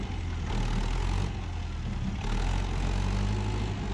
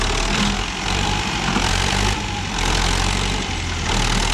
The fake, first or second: second